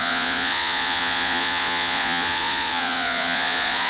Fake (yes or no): yes